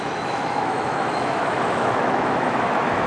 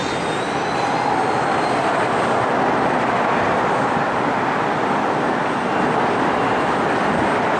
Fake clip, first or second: first